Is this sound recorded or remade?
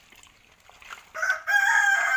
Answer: recorded